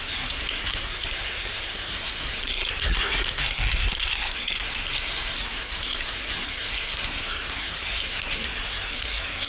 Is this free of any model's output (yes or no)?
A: no